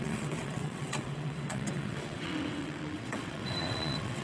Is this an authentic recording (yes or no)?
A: no